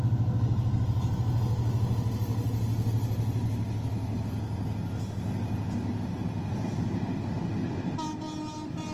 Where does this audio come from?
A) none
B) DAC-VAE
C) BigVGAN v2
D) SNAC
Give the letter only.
A